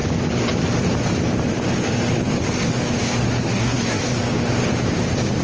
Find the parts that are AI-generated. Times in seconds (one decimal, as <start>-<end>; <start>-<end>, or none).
3.3-4.0

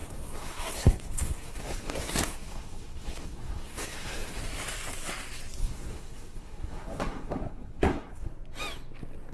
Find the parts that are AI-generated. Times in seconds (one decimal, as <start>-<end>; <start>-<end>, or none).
0.0-4.4; 5.6-8.3

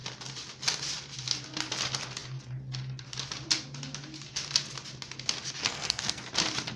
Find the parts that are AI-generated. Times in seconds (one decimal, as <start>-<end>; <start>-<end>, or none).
5.6-6.3

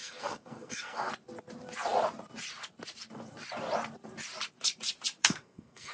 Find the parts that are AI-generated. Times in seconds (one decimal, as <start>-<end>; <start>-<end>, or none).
0.0-1.1; 5.2-5.9

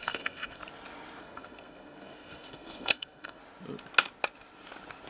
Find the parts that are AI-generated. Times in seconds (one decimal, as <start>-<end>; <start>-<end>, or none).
0.0-0.6; 1.2-3.4